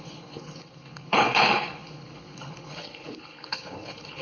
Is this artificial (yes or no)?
yes